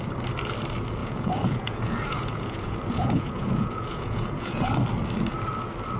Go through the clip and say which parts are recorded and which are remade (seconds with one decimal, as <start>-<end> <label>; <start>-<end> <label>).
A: 0.0-1.0 recorded; 1.0-4.6 remade; 4.6-6.0 recorded